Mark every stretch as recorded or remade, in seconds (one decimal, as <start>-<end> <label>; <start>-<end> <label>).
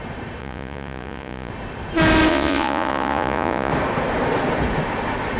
0.0-0.4 recorded; 0.4-1.5 remade; 1.5-2.3 recorded; 2.3-3.7 remade; 3.7-5.4 recorded